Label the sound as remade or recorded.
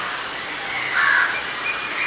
recorded